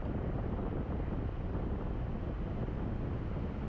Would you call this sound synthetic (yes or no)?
no